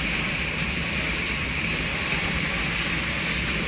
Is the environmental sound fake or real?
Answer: real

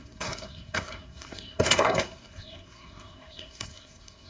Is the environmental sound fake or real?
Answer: fake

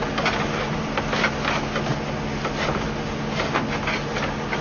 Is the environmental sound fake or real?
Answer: real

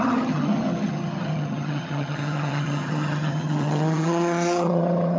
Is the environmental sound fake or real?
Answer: fake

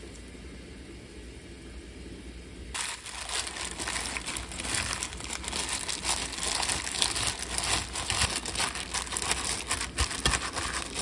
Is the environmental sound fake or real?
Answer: real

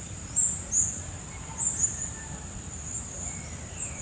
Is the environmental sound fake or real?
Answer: fake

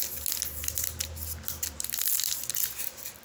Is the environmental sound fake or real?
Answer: real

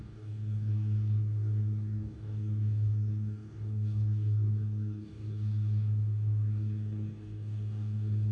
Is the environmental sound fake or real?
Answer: fake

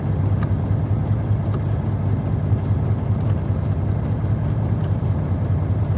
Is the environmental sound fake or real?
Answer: real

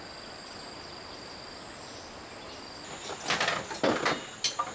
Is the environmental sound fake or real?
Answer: real